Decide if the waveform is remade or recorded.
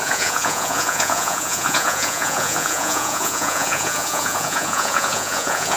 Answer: remade